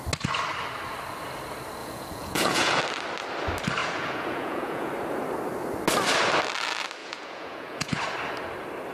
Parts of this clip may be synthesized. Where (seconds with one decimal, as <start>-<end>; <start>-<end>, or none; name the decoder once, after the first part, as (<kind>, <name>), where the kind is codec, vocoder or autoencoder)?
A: 1.8-2.8 (vocoder, Vocos); 3.8-4.9; 7.0-8.0